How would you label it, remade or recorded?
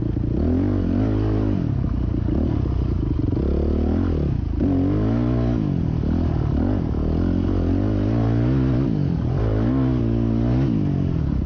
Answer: recorded